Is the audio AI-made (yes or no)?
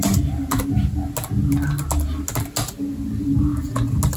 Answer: no